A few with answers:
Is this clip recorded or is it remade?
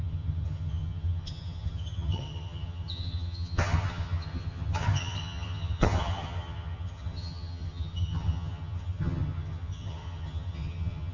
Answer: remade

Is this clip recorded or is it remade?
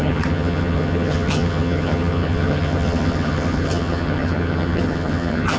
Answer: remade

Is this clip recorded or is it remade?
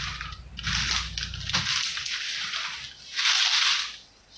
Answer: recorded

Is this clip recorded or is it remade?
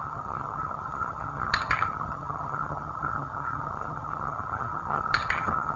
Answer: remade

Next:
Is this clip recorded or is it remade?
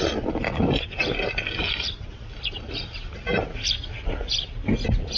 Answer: recorded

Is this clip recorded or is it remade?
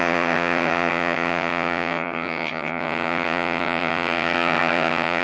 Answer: remade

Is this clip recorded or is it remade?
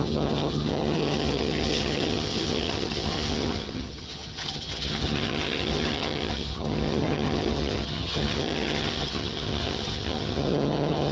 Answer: remade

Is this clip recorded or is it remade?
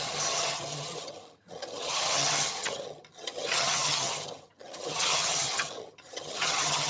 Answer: remade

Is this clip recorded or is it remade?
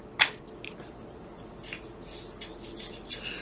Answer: recorded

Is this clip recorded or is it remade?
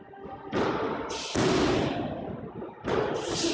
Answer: recorded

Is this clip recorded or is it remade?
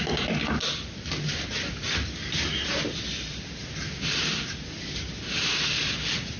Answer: recorded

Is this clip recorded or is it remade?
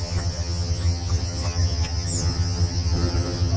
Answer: remade